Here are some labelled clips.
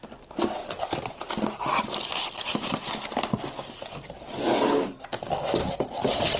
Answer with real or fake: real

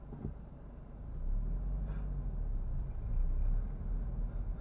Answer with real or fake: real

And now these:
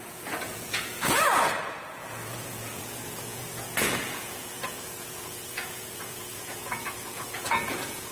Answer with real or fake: fake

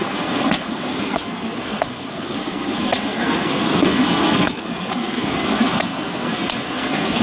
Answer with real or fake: fake